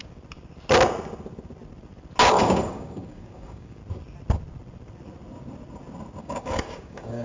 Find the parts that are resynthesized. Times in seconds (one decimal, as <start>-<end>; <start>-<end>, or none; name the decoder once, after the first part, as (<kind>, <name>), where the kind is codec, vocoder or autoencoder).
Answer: 2.3-3.8 (codec, DAC); 6.2-7.2